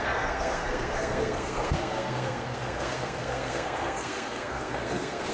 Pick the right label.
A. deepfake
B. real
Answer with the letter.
A